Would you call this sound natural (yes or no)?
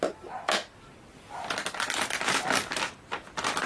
yes